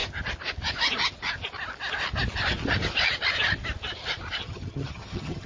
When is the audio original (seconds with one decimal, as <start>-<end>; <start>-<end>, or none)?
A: 0.0-4.4